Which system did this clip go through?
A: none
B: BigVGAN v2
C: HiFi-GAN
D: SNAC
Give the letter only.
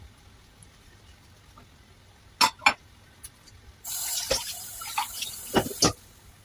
A